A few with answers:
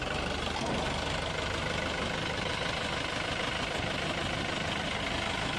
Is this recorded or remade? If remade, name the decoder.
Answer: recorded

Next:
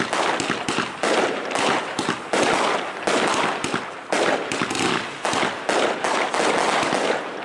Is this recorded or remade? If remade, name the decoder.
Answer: recorded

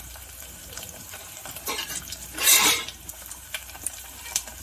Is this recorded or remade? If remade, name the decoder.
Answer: remade, vocoder, BigVGAN v2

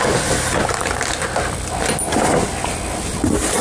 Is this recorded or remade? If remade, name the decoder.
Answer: recorded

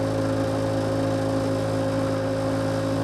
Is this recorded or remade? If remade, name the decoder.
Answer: recorded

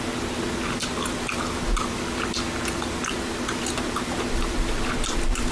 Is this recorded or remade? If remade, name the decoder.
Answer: recorded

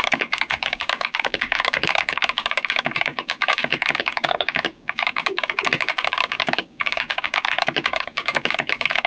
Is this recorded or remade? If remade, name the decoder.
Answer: remade, codec, DAC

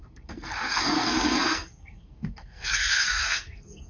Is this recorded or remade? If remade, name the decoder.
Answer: remade, codec, SNAC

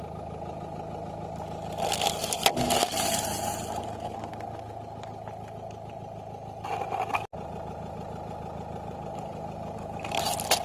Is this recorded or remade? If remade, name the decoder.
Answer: recorded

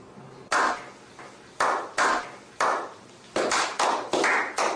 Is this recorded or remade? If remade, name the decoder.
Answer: recorded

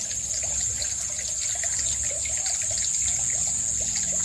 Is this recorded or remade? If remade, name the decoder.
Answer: recorded